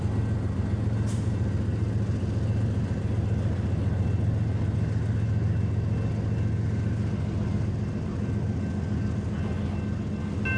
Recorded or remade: recorded